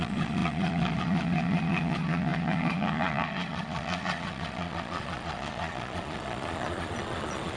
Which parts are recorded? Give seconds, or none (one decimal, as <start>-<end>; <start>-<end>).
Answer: none